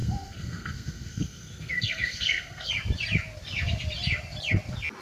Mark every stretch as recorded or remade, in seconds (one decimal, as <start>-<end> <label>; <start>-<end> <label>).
0.0-2.7 remade; 2.7-5.0 recorded